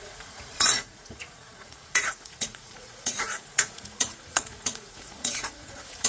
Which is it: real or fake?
fake